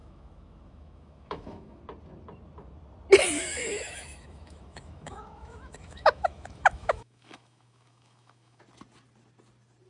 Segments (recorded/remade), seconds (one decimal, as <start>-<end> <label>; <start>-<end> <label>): 0.0-1.8 remade; 1.8-3.4 recorded; 3.4-8.6 remade; 8.6-9.9 recorded